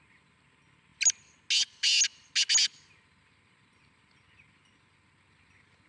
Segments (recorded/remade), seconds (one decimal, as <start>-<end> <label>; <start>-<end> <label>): 0.0-5.9 recorded